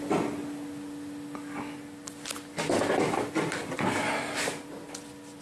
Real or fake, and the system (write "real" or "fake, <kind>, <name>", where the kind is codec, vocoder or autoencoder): real